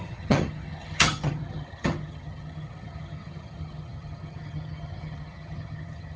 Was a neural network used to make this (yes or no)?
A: yes